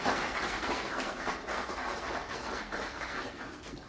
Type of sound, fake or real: fake